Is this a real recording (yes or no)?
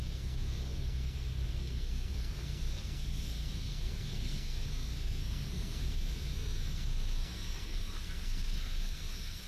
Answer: no